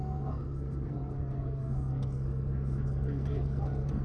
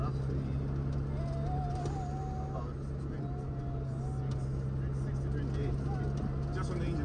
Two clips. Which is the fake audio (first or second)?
first